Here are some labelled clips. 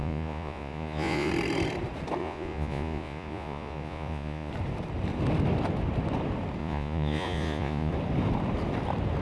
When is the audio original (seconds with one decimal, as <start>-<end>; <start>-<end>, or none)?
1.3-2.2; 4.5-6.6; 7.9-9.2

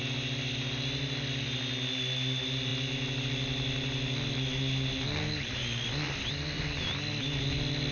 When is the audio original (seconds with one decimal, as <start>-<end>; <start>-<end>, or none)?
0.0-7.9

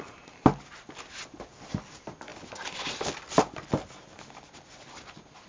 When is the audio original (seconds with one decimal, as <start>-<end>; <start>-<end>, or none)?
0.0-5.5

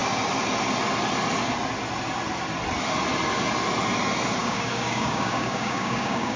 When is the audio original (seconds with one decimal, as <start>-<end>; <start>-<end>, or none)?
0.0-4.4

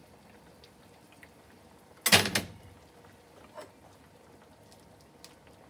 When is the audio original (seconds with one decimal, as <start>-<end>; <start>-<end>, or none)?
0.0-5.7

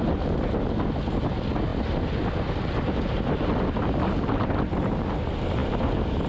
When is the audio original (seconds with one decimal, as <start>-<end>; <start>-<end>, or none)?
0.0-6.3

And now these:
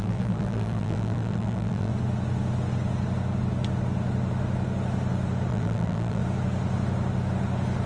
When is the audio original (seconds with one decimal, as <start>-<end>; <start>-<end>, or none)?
1.9-5.5; 6.2-7.9